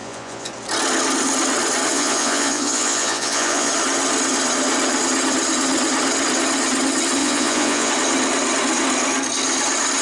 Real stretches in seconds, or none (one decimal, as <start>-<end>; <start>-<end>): 0.5-1.9; 3.7-7.2; 7.9-10.0